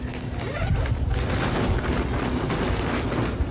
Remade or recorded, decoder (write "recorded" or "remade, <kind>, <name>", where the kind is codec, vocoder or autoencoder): recorded